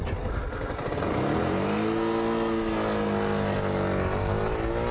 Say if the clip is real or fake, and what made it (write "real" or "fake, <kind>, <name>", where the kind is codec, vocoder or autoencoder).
real